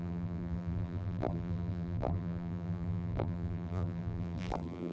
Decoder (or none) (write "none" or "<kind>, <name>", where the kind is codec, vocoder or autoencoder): vocoder, BigVGAN v2